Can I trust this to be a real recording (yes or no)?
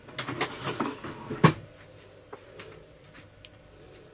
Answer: yes